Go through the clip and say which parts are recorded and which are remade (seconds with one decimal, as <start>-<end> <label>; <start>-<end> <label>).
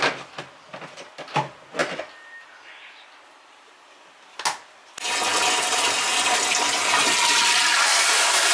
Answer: 0.0-8.5 recorded